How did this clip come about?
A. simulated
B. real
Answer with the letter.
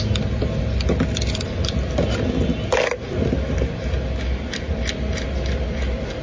B